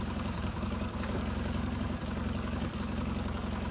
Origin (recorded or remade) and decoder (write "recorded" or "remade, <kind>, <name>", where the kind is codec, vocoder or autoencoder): remade, codec, DAC